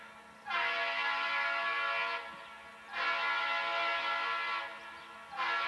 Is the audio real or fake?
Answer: real